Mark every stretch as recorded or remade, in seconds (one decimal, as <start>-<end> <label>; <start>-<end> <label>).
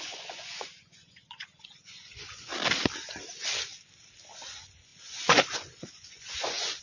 0.0-2.5 remade; 2.5-4.5 recorded; 4.5-6.8 remade